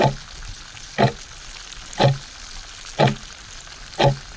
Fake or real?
real